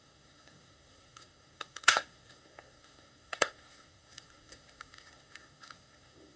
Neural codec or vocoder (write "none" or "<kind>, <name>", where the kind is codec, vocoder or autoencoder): codec, SNAC